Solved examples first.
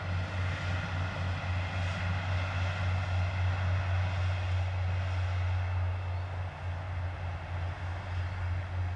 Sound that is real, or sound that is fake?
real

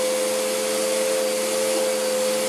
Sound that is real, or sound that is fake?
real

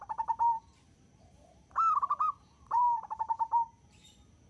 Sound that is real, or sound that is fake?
fake